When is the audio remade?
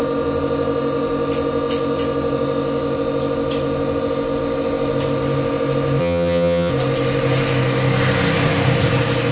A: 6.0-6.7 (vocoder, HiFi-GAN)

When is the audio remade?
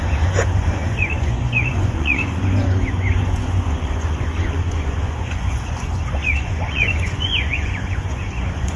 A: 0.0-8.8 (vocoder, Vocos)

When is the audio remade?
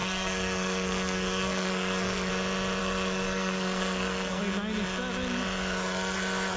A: 0.0-2.3 (codec, SNAC); 2.8-4.4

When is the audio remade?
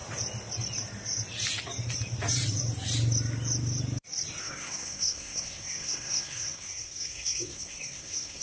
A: 4.4-8.4 (codec, SNAC)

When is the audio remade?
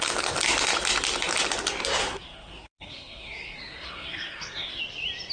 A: 2.0-4.8 (codec, SNAC)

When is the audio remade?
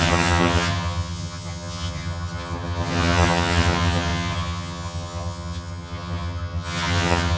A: 0.0-7.4 (vocoder, HiFi-GAN)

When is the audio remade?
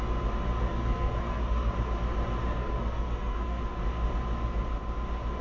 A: 0.7-1.7 (codec, SNAC); 2.6-3.6